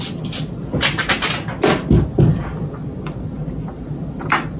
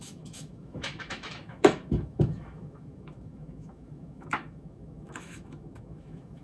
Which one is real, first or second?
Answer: first